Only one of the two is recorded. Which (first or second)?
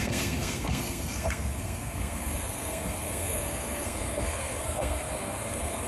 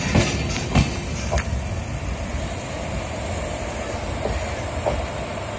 second